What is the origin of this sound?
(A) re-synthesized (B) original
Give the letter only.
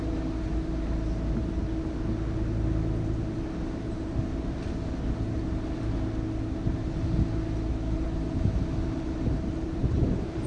B